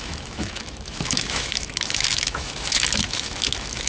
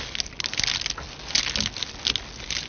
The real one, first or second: second